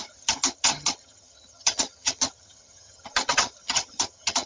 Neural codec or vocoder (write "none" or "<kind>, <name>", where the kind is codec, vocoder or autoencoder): vocoder, HiFi-GAN